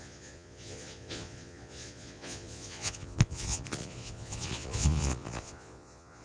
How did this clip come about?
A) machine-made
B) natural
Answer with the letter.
A